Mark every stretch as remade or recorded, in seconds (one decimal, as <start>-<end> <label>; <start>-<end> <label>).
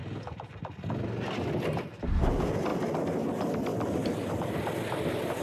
0.0-5.4 recorded